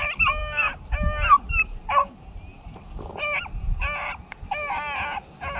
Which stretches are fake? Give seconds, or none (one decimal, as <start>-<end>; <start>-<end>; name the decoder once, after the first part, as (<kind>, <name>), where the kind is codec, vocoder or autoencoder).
none